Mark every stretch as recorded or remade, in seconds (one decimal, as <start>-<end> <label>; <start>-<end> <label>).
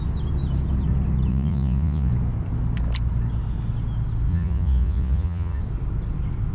0.0-1.3 recorded; 1.3-2.1 remade; 2.1-4.3 recorded; 4.3-5.6 remade; 5.6-6.5 recorded